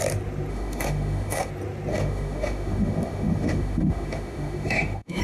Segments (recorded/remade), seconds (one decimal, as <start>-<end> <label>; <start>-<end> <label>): 0.0-0.5 recorded; 0.5-1.5 remade; 1.5-1.9 recorded; 1.9-5.2 remade